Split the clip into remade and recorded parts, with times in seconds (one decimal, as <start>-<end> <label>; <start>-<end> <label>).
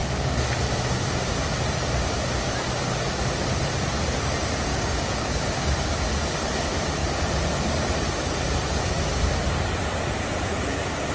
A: 0.0-4.7 recorded; 4.7-5.7 remade; 5.7-11.1 recorded